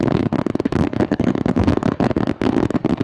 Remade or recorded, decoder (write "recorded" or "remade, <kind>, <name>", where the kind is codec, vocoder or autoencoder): remade, codec, SNAC